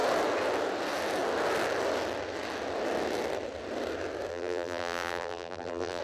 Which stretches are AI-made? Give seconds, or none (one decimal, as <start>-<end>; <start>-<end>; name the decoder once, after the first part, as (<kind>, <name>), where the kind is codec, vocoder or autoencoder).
4.3-6.0 (vocoder, BigVGAN v2)